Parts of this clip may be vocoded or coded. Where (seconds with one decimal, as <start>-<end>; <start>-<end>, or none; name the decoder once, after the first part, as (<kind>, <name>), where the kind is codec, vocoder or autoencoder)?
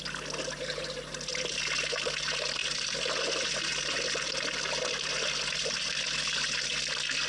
2.6-5.8 (vocoder, BigVGAN v2)